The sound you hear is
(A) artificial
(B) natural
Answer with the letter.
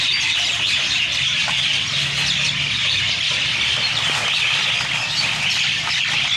B